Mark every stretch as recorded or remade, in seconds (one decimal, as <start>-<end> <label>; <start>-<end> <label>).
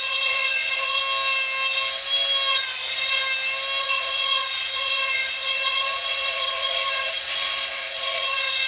0.0-1.0 remade; 1.0-2.5 recorded; 2.5-3.2 remade; 3.2-3.8 recorded; 3.8-8.7 remade